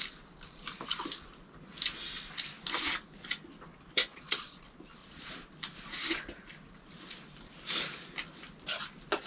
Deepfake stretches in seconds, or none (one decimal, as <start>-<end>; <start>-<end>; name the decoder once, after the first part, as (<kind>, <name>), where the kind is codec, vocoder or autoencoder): 4.1-4.6 (vocoder, Vocos); 5.0-5.5